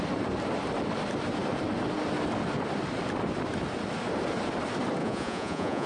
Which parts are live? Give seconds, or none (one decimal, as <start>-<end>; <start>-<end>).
0.0-5.0